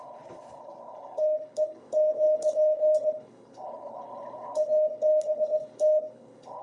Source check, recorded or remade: remade